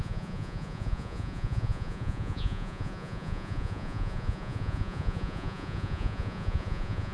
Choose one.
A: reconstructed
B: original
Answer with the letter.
A